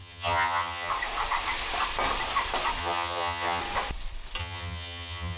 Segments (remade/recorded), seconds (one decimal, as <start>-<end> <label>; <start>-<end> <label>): 0.0-0.9 remade; 0.9-2.8 recorded; 2.8-3.6 remade; 3.6-4.4 recorded; 4.4-5.4 remade